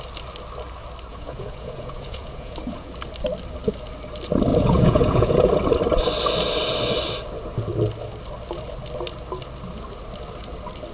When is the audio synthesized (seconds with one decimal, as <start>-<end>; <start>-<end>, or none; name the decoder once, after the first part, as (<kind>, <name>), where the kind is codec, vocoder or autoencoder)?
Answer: 1.1-2.9 (vocoder, Vocos); 4.5-5.5